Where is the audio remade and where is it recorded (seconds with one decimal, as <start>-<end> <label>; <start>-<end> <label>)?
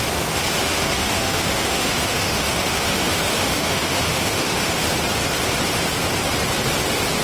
0.0-0.6 recorded; 0.6-4.9 remade; 4.9-7.2 recorded